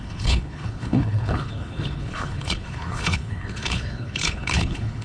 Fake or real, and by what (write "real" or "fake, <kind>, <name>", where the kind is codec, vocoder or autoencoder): fake, codec, HILCodec